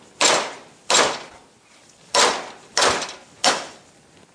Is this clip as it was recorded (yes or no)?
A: yes